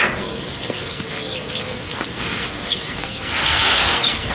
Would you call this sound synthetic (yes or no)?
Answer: yes